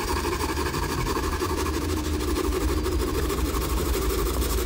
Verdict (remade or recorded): remade